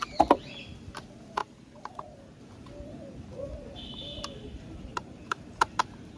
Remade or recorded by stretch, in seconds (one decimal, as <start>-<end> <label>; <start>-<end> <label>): 0.0-1.4 recorded; 1.4-2.4 remade; 2.4-5.2 recorded; 5.2-5.8 remade; 5.8-6.2 recorded